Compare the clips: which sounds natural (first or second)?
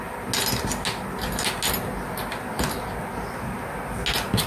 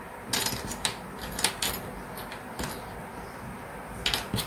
first